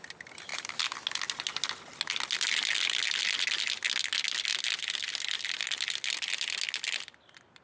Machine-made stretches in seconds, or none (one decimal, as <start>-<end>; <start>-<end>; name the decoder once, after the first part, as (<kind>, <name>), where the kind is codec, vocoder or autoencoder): none